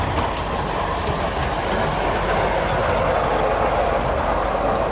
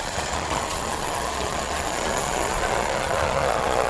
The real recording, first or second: first